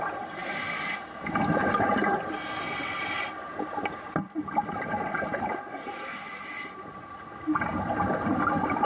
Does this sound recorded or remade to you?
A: recorded